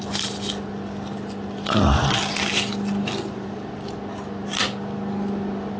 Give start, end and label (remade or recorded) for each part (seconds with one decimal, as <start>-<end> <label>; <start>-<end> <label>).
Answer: 0.0-5.8 recorded